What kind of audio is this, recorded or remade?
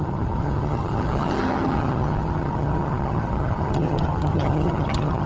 remade